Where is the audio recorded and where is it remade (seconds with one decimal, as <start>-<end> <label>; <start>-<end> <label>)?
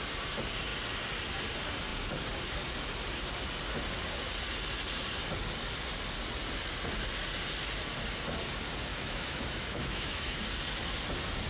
0.0-8.9 recorded; 8.9-10.4 remade; 10.4-11.5 recorded